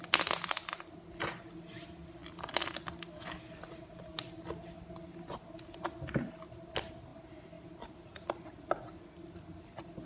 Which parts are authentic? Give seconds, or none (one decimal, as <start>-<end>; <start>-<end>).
0.0-10.1